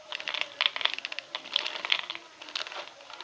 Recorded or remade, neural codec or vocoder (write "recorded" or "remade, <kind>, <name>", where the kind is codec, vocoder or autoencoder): recorded